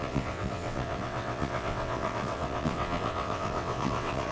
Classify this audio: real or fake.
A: fake